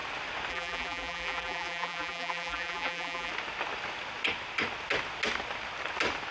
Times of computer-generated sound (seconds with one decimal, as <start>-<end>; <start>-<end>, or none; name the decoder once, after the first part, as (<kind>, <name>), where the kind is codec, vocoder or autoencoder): 0.5-3.3 (vocoder, BigVGAN v2)